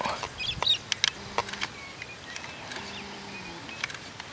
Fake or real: real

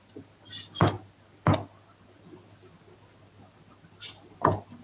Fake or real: real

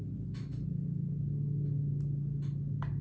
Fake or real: real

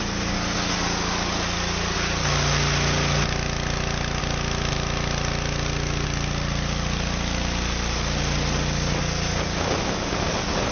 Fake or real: real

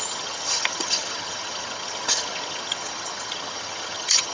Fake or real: fake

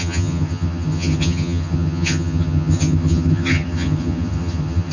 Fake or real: fake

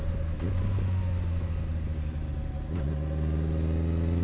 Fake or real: real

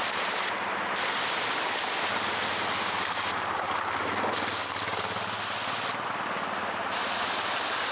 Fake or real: real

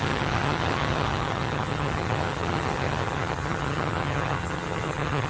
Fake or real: fake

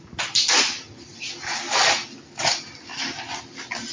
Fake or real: real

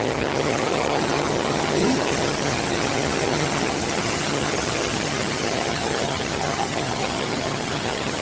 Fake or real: fake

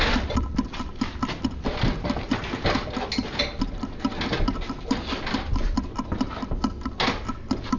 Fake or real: real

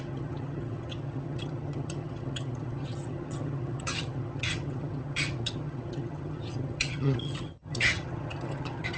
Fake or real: fake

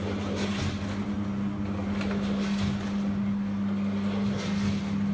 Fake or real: real